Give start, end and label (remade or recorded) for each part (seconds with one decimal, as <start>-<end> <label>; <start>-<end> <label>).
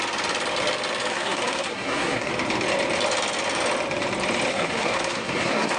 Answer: 0.0-1.1 recorded; 1.1-2.3 remade; 2.3-4.5 recorded; 4.5-5.8 remade